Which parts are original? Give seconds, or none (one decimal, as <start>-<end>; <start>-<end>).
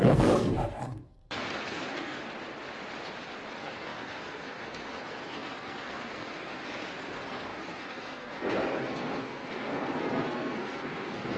2.3-3.5